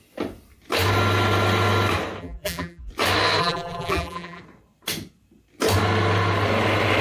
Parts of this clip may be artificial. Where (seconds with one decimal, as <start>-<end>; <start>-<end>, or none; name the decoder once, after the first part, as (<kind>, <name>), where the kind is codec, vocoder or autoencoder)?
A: 2.2-2.9 (vocoder, BigVGAN v2); 3.4-4.4